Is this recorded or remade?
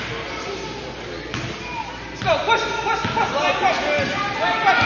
recorded